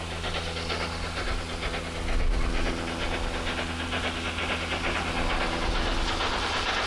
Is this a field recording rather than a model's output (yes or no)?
yes